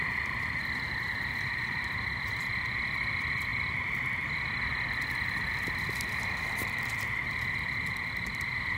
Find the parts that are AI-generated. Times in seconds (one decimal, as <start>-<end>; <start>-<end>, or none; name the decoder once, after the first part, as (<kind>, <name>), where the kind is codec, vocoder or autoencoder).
0.0-3.5 (vocoder, BigVGAN v2); 4.1-4.7; 6.9-8.8

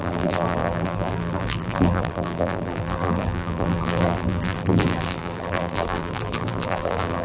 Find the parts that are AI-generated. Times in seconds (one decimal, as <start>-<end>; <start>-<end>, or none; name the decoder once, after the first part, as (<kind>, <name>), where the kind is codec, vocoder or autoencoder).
0.0-7.2 (vocoder, BigVGAN v2)

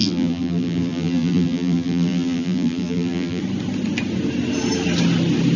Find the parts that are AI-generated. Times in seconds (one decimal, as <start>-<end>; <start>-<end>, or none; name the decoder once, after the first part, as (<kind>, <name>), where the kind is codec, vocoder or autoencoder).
0.0-3.4 (vocoder, BigVGAN v2)

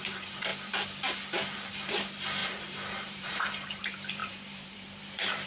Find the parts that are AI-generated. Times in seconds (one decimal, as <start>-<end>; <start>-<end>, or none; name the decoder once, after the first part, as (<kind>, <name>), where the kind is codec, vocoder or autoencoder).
0.0-0.5 (vocoder, BigVGAN v2); 1.7-5.5

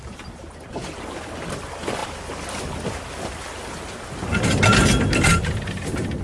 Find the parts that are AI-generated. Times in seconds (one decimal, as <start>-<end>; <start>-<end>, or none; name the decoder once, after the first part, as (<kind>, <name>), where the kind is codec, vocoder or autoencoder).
2.0-5.7 (vocoder, BigVGAN v2)

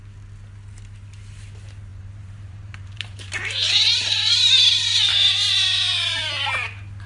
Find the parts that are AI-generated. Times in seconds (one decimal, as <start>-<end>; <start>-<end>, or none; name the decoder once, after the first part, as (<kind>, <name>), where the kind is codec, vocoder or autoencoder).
1.9-3.3 (vocoder, BigVGAN v2)

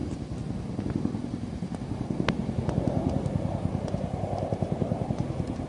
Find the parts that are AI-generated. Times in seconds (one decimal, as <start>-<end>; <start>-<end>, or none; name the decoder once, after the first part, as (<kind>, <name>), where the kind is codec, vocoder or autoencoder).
3.6-5.1 (vocoder, BigVGAN v2)

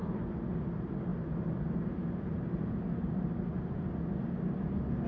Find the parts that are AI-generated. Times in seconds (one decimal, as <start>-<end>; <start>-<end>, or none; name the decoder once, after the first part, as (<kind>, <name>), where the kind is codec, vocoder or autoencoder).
none